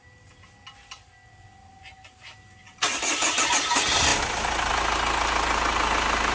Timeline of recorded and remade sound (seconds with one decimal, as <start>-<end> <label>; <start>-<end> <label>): 0.0-6.3 recorded